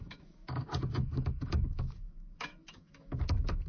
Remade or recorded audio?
remade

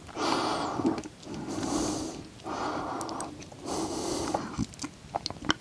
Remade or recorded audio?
recorded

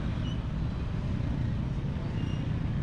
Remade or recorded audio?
recorded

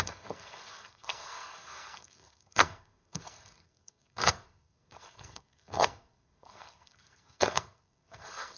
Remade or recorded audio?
remade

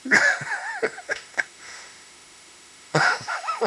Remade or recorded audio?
remade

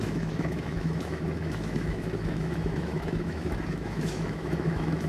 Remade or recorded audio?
remade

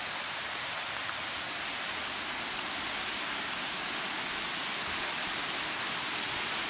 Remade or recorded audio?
recorded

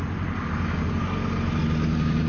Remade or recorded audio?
recorded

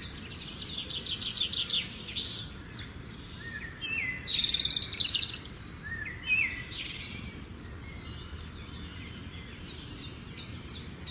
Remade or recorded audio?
recorded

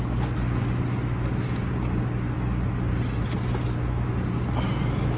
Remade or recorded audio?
recorded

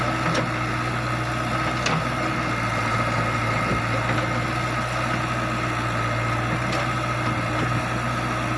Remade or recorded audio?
recorded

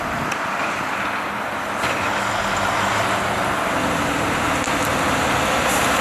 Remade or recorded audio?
recorded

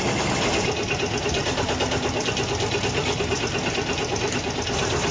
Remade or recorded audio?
remade